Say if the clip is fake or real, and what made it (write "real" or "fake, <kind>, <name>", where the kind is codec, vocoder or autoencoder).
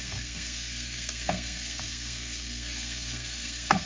fake, codec, SNAC